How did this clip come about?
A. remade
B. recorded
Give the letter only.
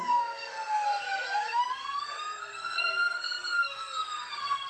A